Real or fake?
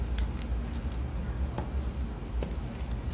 real